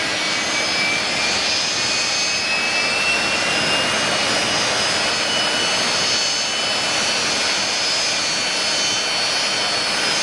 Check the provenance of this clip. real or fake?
real